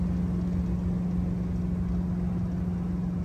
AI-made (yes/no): no